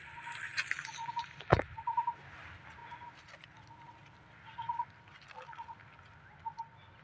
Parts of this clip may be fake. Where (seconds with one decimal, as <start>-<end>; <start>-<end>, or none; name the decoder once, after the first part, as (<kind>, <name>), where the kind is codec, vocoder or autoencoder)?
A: none

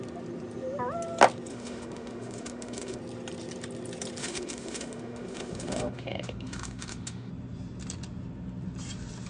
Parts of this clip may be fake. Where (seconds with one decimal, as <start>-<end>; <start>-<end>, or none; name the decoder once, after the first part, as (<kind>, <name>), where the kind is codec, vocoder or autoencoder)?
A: 1.5-3.0 (autoencoder, DAC-VAE); 4.2-7.3